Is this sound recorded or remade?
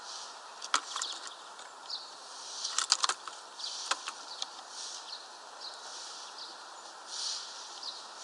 recorded